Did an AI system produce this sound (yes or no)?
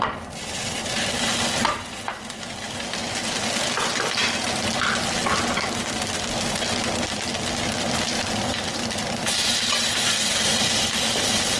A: no